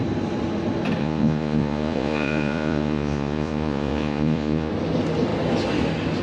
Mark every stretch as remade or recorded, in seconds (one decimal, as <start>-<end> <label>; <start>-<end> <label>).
0.0-1.0 recorded; 1.0-4.7 remade; 4.7-6.2 recorded